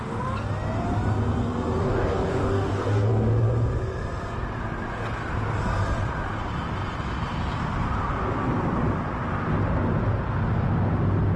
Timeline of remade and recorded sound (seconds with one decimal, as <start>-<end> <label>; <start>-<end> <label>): 0.0-1.8 recorded; 1.8-3.1 remade; 3.1-11.4 recorded